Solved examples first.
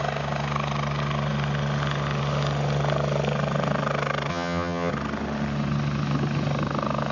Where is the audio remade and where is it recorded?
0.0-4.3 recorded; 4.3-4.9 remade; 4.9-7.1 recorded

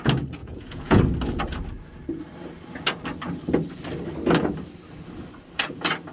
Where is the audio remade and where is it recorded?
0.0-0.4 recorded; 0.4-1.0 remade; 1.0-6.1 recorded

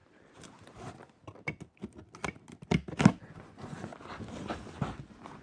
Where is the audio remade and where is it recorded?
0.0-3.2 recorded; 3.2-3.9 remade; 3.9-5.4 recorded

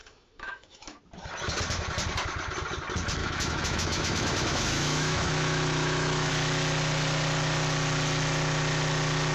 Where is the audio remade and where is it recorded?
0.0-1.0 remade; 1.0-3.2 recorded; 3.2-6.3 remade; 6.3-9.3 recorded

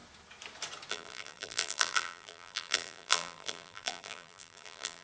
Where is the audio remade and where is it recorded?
0.0-0.9 recorded; 0.9-5.0 remade

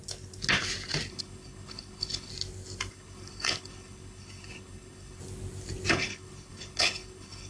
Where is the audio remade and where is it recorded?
0.0-1.1 recorded; 1.1-2.3 remade; 2.3-2.9 recorded; 2.9-5.2 remade; 5.2-5.9 recorded; 5.9-7.5 remade